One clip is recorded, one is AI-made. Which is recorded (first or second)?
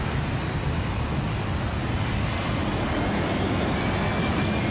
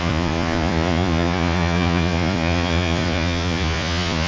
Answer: first